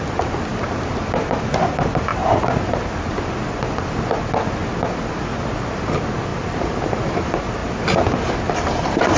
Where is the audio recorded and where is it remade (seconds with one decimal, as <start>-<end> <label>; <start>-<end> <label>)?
0.0-2.1 recorded; 2.1-2.7 remade; 2.7-6.3 recorded; 6.3-6.9 remade; 6.9-9.2 recorded